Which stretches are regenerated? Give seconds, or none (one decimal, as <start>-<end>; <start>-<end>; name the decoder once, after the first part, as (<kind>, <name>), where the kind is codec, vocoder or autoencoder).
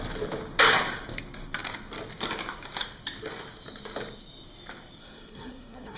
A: 5.0-6.0 (codec, SNAC)